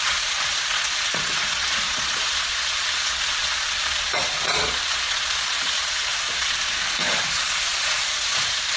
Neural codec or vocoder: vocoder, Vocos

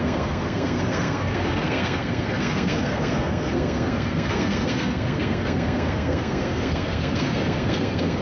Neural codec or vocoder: codec, SNAC